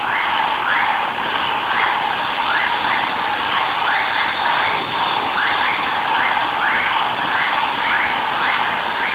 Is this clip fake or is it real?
real